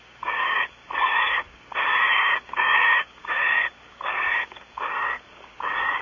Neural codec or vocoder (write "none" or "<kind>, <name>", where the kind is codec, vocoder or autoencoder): codec, DAC